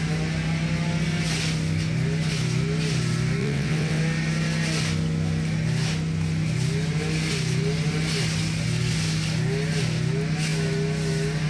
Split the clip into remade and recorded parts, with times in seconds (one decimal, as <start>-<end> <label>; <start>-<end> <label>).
0.0-3.4 recorded; 3.4-4.0 remade; 4.0-11.5 recorded